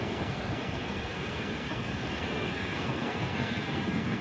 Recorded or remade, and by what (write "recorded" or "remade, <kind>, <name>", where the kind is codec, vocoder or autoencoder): remade, codec, SNAC